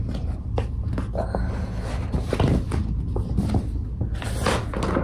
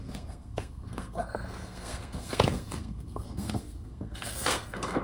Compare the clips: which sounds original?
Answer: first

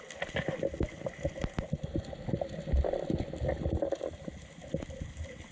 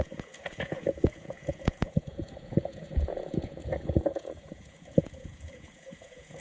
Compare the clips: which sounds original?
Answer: first